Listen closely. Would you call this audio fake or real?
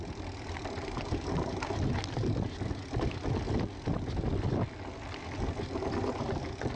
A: real